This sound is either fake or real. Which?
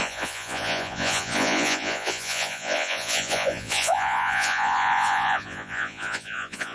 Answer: fake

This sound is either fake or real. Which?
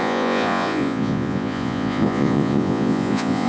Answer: fake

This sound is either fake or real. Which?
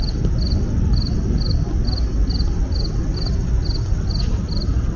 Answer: real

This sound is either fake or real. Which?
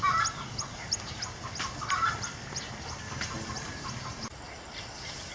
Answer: real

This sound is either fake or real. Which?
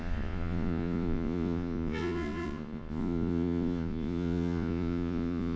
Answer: fake